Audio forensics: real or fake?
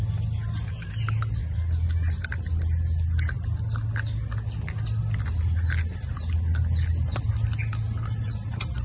real